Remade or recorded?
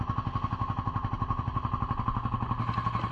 recorded